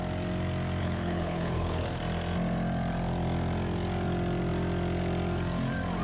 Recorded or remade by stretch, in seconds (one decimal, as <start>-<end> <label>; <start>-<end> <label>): 0.0-0.8 recorded; 0.8-2.0 remade; 2.0-6.0 recorded